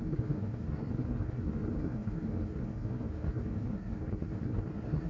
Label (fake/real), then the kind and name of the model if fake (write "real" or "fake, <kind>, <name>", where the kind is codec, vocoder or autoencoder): fake, codec, SNAC